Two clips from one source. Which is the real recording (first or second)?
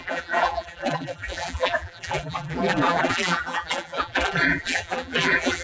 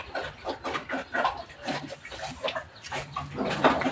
second